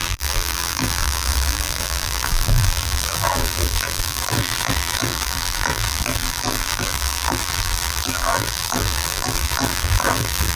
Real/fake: fake